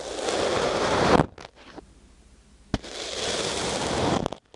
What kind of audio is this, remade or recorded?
recorded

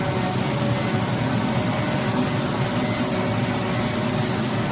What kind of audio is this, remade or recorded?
recorded